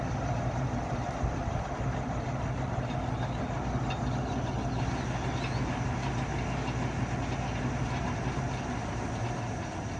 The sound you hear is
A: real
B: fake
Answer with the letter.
A